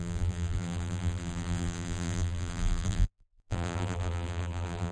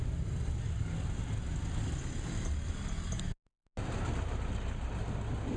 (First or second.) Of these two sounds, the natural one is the second